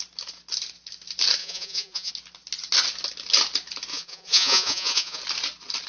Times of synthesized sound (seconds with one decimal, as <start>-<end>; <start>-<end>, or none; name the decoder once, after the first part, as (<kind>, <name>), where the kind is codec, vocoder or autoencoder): 1.4-2.1 (vocoder, Vocos); 3.9-5.2